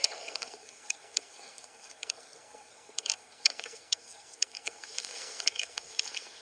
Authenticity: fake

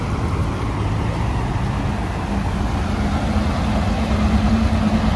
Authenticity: real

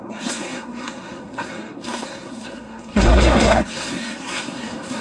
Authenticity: fake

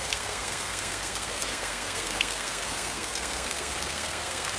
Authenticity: fake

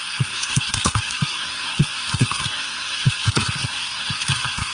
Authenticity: fake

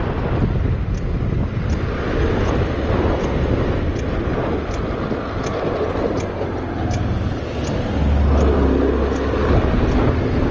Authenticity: real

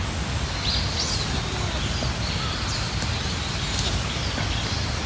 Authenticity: real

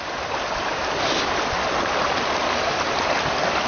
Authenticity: real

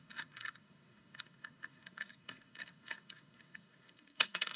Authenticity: fake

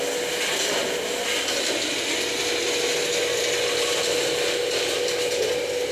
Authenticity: real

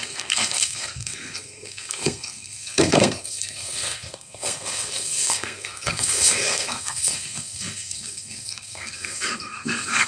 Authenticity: fake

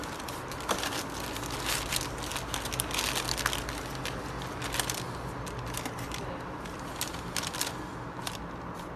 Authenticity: real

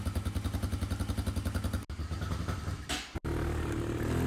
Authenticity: real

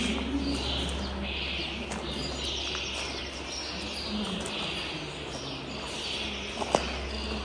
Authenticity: real